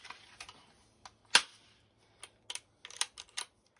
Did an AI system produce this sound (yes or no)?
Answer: no